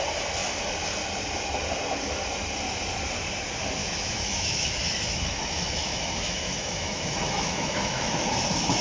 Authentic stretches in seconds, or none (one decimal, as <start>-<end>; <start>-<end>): 0.0-3.8; 8.3-8.8